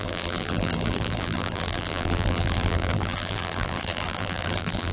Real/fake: fake